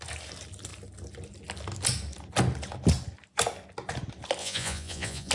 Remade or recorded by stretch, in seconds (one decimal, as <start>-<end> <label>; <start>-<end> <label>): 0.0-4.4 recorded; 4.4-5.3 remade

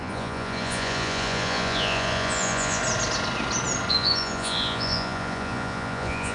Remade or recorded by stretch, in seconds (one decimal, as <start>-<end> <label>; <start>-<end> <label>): 0.0-2.8 remade; 2.8-3.9 recorded; 3.9-6.3 remade

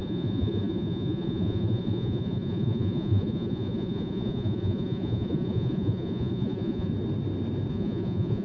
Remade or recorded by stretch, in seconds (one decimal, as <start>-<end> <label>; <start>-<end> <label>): 0.0-6.9 remade; 6.9-7.7 recorded; 7.7-8.4 remade